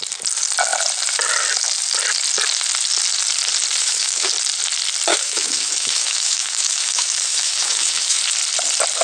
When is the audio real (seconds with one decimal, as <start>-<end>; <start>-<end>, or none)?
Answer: 0.0-3.8; 4.3-5.1; 8.2-9.0